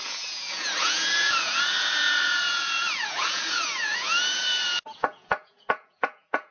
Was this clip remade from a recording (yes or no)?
yes